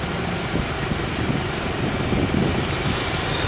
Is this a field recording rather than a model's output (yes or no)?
yes